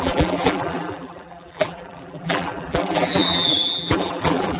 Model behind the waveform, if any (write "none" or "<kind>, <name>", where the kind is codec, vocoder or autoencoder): vocoder, BigVGAN v2